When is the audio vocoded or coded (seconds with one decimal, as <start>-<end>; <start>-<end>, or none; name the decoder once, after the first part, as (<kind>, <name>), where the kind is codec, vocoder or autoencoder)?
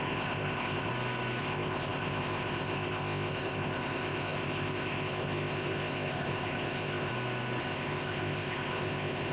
0.0-0.9 (codec, ZipCodec); 1.4-7.1; 7.6-9.3